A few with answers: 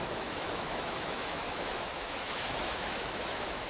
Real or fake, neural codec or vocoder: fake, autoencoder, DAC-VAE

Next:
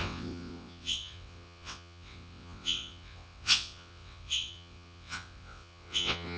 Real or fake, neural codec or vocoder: fake, vocoder, WaveNeXt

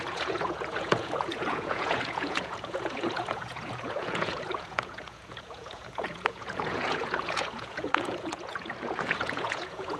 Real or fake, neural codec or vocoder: fake, vocoder, Vocos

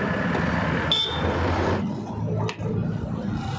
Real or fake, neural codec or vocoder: real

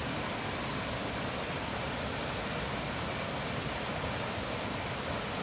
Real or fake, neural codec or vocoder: real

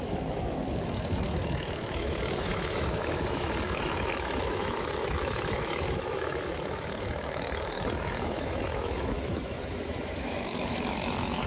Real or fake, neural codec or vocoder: fake, autoencoder, DAC-VAE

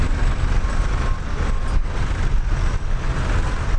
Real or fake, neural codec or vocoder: real